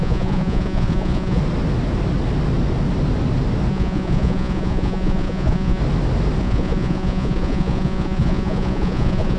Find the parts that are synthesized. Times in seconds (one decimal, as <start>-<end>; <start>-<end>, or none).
0.0-1.4; 3.7-5.8; 6.4-9.4

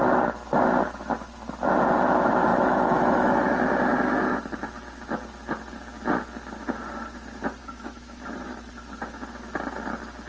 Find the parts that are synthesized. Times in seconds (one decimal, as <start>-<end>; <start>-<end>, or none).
2.5-3.4; 7.6-8.7

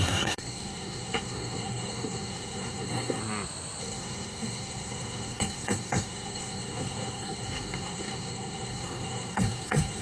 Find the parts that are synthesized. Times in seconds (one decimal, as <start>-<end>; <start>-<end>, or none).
0.0-3.2; 3.8-10.0

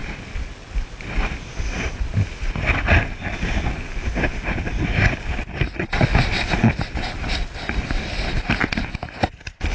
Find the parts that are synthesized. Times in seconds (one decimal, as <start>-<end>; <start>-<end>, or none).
0.0-9.7

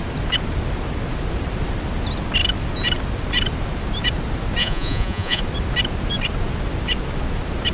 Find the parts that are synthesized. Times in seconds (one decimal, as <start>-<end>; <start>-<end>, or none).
4.6-5.4